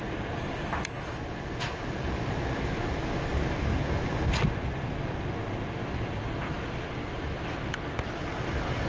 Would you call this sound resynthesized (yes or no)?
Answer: no